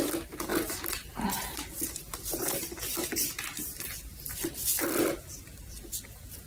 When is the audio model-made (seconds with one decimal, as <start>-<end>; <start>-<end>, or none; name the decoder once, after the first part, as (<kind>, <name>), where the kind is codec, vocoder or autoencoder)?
none